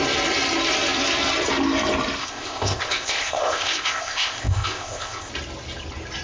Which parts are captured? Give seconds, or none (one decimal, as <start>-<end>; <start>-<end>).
0.0-2.2; 5.3-6.2